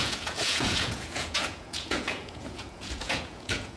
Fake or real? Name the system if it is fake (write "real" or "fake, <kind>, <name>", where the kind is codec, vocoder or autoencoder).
fake, vocoder, Vocos